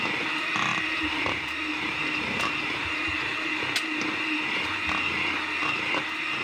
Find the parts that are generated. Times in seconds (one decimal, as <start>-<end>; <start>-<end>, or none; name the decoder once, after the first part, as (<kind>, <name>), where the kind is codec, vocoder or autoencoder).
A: 0.7-3.6 (vocoder, BigVGAN v2)